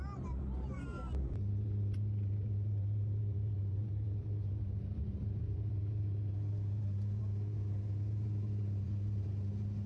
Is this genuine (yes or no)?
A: no